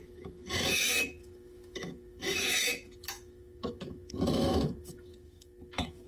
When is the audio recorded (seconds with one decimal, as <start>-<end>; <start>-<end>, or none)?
none